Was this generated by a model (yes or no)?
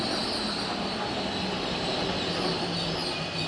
no